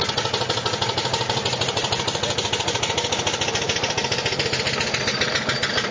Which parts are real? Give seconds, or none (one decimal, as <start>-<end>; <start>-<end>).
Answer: 0.0-5.9